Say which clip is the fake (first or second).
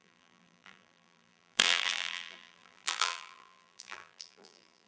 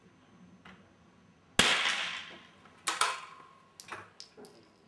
first